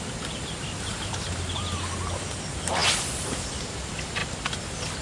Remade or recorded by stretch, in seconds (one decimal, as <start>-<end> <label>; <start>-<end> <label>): 0.0-5.0 recorded